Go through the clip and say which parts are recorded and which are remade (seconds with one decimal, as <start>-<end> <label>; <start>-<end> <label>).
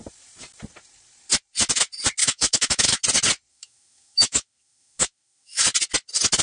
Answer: 0.0-2.2 recorded; 2.2-3.0 remade; 3.0-3.5 recorded; 3.5-5.6 remade; 5.6-6.4 recorded